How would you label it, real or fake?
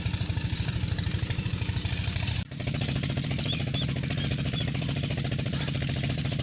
fake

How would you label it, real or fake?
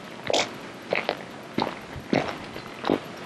real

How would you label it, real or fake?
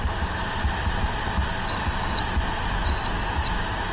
real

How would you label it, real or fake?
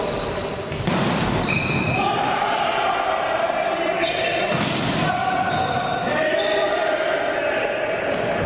fake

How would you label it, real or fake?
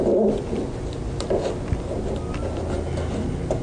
real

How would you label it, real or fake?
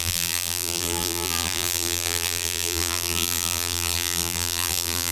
fake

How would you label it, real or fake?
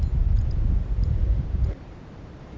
fake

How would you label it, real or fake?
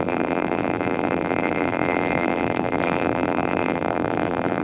fake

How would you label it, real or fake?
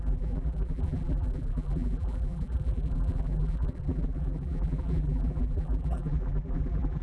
fake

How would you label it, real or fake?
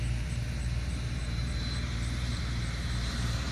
fake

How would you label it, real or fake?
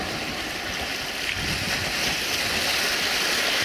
real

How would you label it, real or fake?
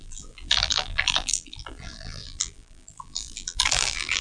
fake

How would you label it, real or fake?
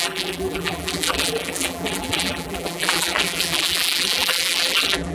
fake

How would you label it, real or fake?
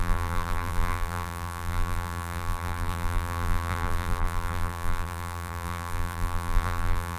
fake